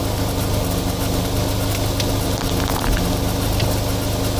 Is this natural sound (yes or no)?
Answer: yes